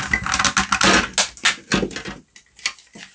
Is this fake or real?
real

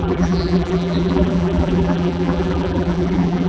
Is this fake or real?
fake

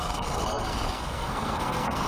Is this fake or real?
fake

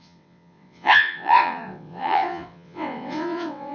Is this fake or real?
fake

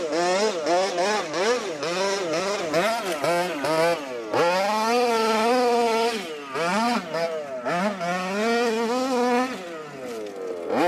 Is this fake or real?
real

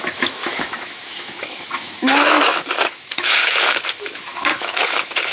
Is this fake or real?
fake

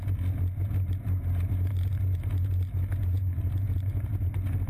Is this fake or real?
real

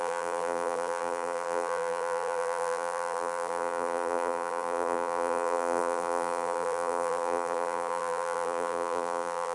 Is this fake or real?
fake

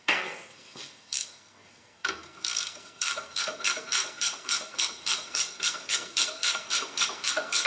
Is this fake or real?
fake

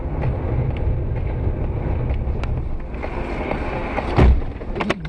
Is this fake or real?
real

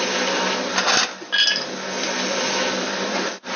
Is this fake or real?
real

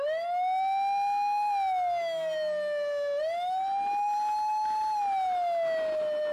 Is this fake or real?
real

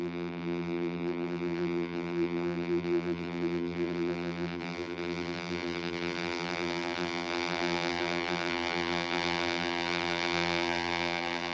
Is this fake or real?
fake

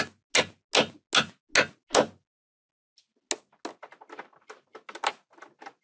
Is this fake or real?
real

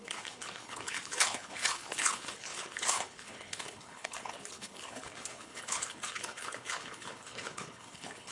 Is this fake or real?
fake